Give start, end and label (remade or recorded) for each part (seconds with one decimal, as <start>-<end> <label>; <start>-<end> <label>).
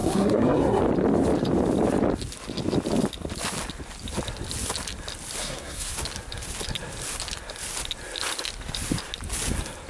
0.0-0.8 remade; 0.8-5.4 recorded; 5.4-5.9 remade; 5.9-9.9 recorded